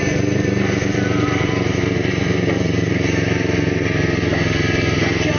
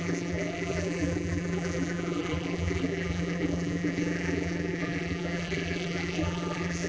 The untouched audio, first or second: first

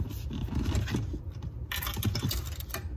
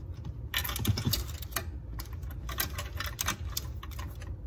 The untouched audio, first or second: second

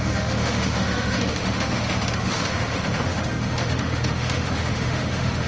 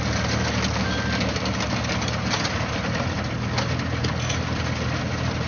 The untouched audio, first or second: second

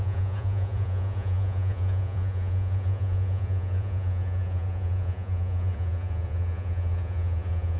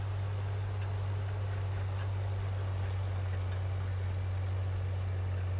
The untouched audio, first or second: second